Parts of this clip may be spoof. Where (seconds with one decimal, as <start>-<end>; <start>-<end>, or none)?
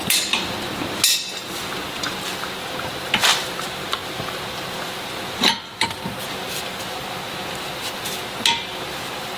none